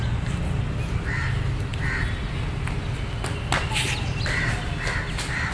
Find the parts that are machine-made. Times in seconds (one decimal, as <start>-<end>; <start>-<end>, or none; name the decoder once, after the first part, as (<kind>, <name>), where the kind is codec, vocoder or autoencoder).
none